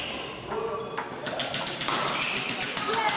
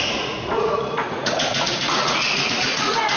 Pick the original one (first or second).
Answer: first